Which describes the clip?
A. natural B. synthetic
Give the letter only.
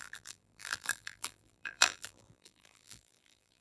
B